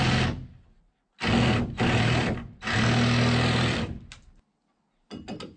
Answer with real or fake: real